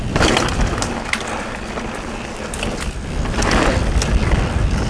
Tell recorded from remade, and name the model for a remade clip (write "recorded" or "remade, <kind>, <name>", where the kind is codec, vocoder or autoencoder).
recorded